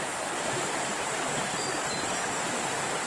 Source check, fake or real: real